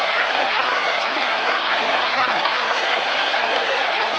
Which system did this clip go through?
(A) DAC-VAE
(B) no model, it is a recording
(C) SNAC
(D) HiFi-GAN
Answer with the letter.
C